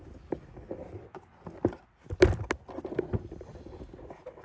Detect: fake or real real